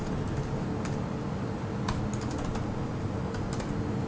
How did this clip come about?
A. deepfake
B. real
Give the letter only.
B